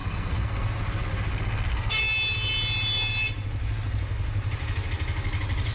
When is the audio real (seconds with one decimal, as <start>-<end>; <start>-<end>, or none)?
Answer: 0.7-1.3; 2.0-5.7